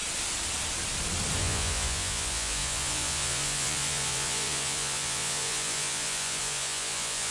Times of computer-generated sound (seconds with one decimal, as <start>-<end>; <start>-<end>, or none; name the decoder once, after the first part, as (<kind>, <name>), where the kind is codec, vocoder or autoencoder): 1.4-7.3 (vocoder, Vocos)